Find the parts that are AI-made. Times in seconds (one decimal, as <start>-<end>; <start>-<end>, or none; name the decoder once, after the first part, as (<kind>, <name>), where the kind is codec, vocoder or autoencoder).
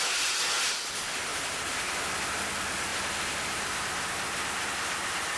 1.3-1.8 (vocoder, BigVGAN v2)